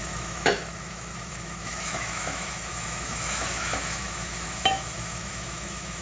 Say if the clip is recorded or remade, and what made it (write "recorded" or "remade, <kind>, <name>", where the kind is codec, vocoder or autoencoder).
remade, autoencoder, DAC-VAE